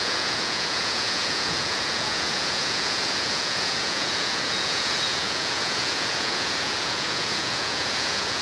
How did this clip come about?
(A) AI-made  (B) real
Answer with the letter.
A